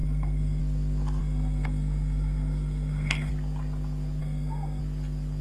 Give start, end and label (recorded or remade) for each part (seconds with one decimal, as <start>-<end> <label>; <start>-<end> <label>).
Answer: 0.0-0.6 remade; 0.6-1.2 recorded; 1.2-3.3 remade; 3.3-4.2 recorded; 4.2-4.8 remade; 4.8-5.4 recorded